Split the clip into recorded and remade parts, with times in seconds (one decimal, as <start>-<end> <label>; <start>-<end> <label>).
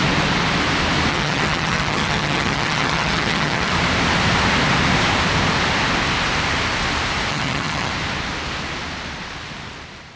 0.0-1.1 recorded; 1.1-3.7 remade; 3.7-7.3 recorded; 7.3-7.9 remade; 7.9-10.2 recorded